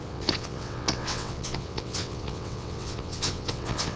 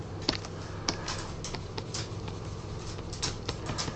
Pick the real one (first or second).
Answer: second